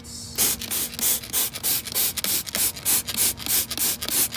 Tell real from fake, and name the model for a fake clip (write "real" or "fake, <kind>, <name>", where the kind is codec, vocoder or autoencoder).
real